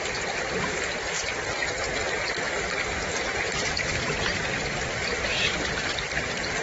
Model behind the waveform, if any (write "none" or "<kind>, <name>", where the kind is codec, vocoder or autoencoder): vocoder, BigVGAN v2